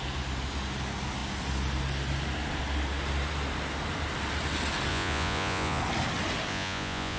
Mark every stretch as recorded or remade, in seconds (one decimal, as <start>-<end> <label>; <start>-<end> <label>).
0.0-4.9 recorded; 4.9-5.8 remade; 5.8-6.5 recorded; 6.5-7.2 remade